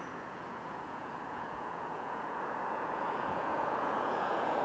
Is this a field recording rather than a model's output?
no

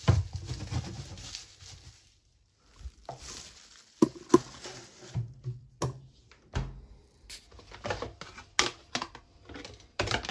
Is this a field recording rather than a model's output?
yes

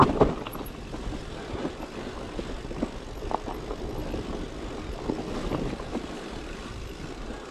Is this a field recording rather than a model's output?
yes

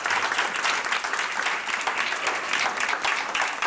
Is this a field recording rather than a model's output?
yes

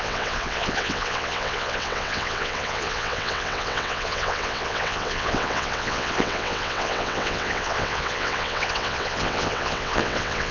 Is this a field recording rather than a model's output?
no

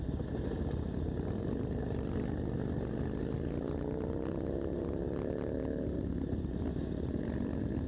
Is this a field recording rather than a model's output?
yes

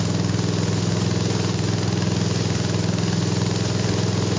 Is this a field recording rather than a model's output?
yes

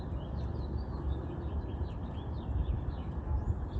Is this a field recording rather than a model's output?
yes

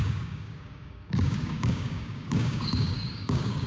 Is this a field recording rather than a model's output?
no